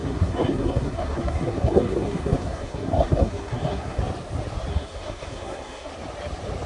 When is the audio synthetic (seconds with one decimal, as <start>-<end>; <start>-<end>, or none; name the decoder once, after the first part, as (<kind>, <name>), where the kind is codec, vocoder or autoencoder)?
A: 0.0-4.0 (codec, SNAC); 4.7-5.9